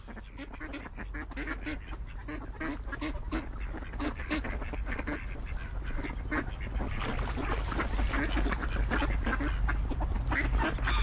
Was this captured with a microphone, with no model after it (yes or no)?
yes